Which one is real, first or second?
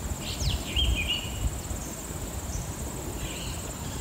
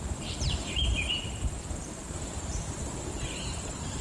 first